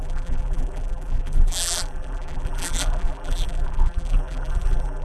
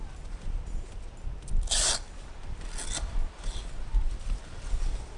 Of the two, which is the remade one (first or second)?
first